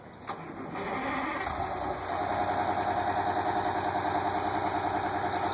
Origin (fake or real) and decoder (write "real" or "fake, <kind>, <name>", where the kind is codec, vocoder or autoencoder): real